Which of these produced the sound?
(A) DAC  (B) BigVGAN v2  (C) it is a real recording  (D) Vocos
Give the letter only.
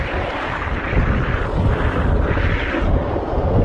C